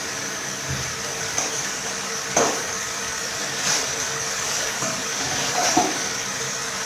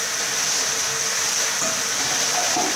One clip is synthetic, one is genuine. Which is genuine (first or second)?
second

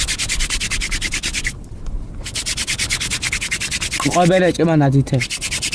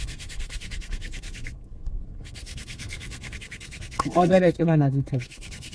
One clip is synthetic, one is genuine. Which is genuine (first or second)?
first